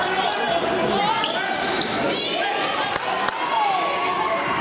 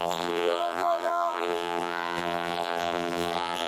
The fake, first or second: second